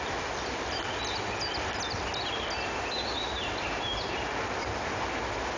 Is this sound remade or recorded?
recorded